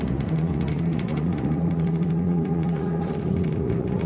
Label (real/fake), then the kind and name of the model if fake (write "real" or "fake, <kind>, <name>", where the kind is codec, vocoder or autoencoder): fake, vocoder, Vocos